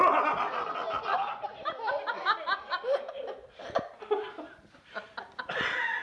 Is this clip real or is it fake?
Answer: real